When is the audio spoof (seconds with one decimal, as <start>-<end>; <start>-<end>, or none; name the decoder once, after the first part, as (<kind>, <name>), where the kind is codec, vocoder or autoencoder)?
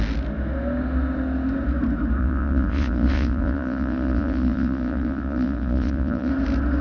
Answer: 2.2-6.3 (vocoder, Vocos)